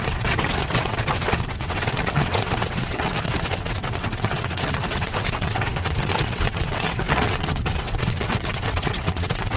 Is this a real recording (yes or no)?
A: no